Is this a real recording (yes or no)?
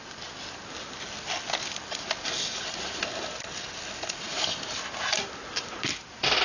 yes